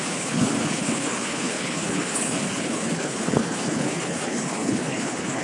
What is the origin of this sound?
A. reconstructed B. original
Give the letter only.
A